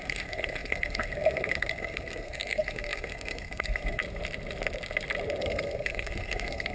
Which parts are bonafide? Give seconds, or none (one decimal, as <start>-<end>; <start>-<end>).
4.0-5.4